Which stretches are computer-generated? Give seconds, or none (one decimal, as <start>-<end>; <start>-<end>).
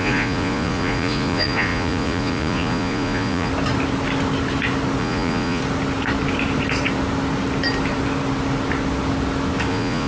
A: 0.0-3.5; 5.0-5.6; 9.7-10.1